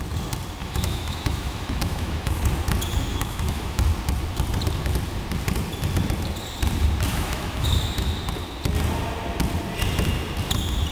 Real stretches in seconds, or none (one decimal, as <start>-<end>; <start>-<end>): 0.0-0.6; 2.4-3.1; 3.8-7.1; 8.1-10.9